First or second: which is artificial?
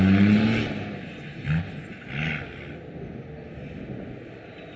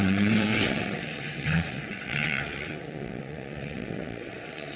second